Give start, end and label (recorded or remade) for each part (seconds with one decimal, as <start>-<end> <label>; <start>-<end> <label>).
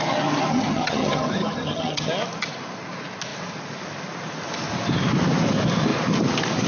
0.0-0.5 recorded; 0.5-2.1 remade; 2.1-6.7 recorded